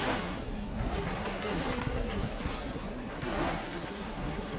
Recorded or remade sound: remade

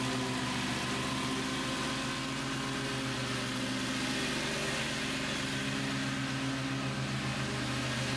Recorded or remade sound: recorded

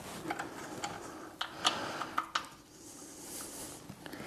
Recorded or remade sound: recorded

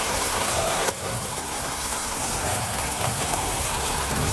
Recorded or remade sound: remade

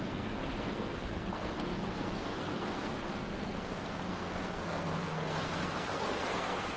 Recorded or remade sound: remade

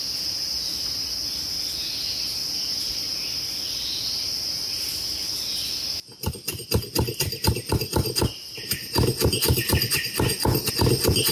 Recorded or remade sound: recorded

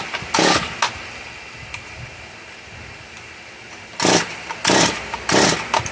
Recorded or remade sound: recorded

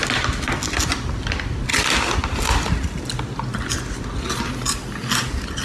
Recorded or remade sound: recorded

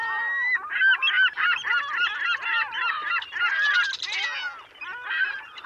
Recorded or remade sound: recorded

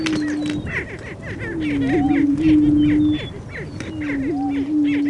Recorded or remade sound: recorded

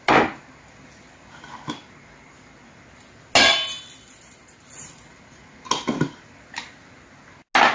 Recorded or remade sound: recorded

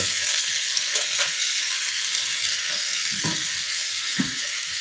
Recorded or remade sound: remade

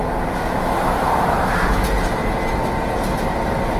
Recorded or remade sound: recorded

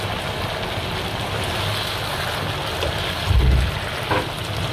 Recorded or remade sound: recorded